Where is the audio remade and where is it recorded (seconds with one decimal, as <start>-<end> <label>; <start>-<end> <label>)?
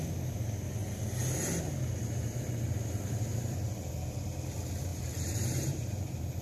0.0-0.8 recorded; 0.8-4.2 remade; 4.2-4.9 recorded; 4.9-6.4 remade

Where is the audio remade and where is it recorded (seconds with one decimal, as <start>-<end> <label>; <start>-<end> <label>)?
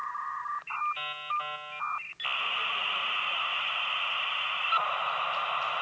0.0-2.8 recorded; 2.8-5.8 remade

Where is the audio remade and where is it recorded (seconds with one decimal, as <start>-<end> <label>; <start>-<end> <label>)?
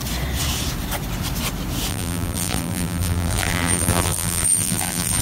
0.0-1.9 recorded; 1.9-5.2 remade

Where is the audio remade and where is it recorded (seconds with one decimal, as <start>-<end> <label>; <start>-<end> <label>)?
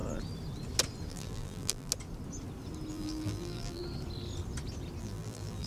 0.0-1.1 recorded; 1.1-1.9 remade; 1.9-2.9 recorded; 2.9-3.8 remade; 3.8-5.0 recorded; 5.0-5.7 remade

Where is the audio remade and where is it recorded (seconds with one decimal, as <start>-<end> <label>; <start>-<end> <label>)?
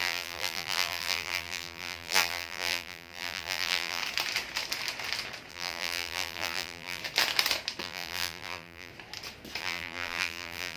0.0-4.0 remade; 4.0-5.5 recorded; 5.5-7.0 remade; 7.0-7.8 recorded; 7.8-8.9 remade; 8.9-9.6 recorded; 9.6-10.8 remade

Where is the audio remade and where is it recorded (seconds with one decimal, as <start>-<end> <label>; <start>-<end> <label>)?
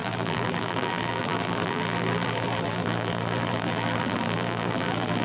0.0-5.2 remade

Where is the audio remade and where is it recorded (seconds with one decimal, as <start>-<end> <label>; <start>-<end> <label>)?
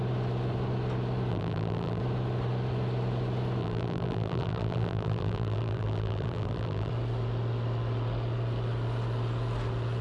0.0-1.3 recorded; 1.3-2.0 remade; 2.0-3.6 recorded; 3.6-6.9 remade; 6.9-10.0 recorded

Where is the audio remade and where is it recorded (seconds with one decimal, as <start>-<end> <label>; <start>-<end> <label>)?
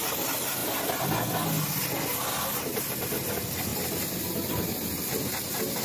0.0-0.6 remade; 0.6-2.6 recorded; 2.6-5.8 remade